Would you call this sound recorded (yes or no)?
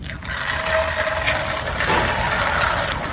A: yes